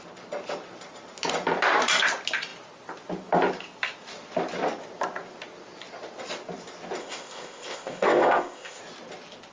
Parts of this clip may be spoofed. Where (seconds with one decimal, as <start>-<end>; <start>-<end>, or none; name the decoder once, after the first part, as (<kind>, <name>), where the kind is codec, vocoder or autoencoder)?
7.0-8.8 (codec, ZipCodec)